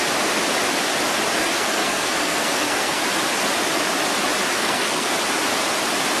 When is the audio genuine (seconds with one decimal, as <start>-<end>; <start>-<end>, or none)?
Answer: 0.0-1.4; 3.0-4.5; 5.1-6.2